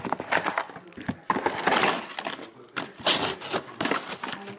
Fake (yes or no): no